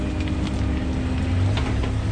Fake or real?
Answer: real